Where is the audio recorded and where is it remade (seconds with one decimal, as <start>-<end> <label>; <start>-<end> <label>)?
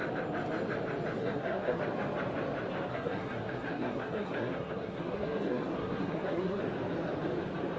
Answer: 0.0-1.2 recorded; 1.2-1.8 remade; 1.8-2.9 recorded; 2.9-6.6 remade; 6.6-7.8 recorded